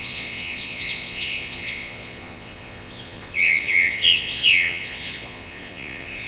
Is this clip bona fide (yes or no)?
no